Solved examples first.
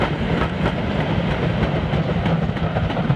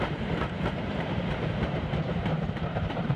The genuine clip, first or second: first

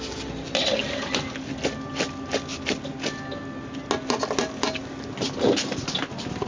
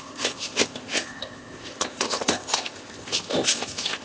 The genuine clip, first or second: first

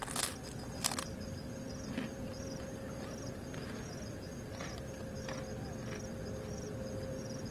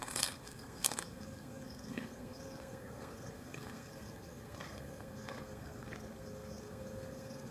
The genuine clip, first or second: first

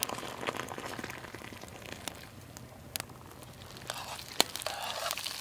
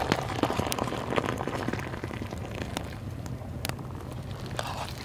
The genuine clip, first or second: first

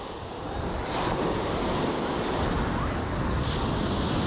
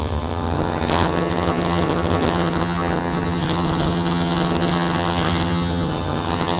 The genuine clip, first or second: first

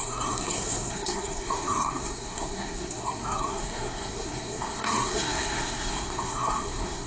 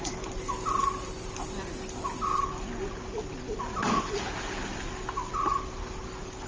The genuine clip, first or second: second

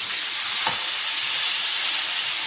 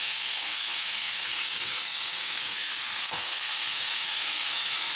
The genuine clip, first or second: first